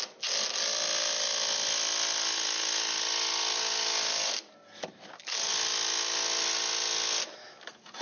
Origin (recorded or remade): recorded